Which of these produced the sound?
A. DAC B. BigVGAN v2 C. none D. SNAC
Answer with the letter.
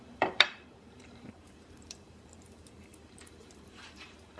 B